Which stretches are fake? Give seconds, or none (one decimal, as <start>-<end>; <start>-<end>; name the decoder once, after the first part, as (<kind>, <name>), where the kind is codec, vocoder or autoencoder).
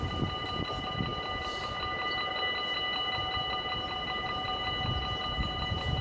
none